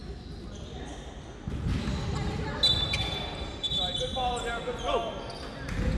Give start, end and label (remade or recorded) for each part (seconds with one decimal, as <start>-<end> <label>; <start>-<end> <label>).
0.0-6.0 recorded